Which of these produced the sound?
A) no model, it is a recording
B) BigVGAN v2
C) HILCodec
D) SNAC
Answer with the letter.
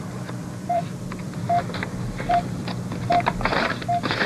B